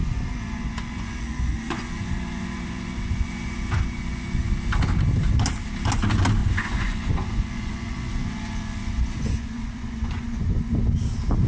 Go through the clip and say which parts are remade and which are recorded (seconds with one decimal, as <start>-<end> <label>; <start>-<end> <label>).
0.0-4.5 remade; 4.5-6.4 recorded; 6.4-10.7 remade; 10.7-11.5 recorded